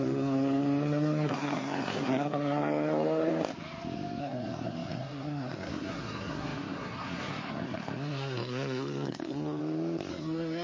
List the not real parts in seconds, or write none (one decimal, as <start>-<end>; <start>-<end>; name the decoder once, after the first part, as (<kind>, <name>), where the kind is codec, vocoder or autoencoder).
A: 0.0-3.3 (codec, SNAC); 4.2-9.6; 10.1-10.6